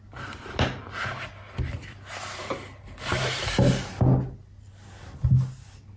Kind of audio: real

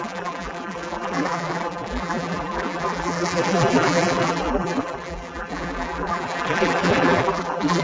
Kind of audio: fake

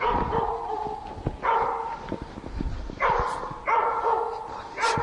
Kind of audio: real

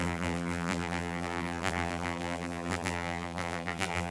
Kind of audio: fake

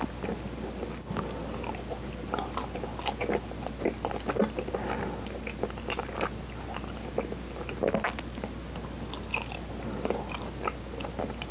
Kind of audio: real